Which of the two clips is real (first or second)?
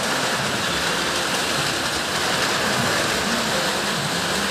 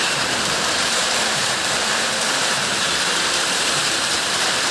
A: first